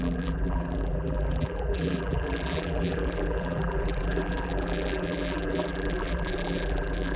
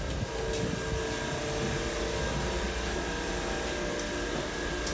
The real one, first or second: second